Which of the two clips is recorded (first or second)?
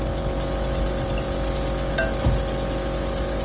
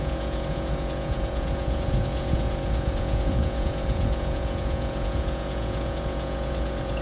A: first